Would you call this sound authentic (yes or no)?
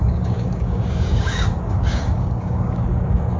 no